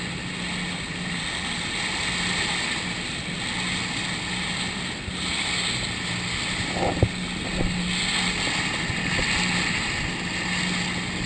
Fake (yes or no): no